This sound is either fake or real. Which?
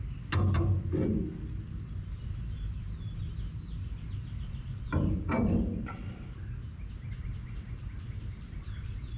real